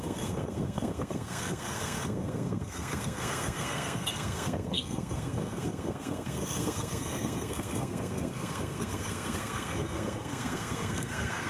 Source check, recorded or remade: remade